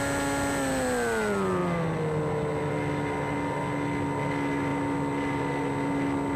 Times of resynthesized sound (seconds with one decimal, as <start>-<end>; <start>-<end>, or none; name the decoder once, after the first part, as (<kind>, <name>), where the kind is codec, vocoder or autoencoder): none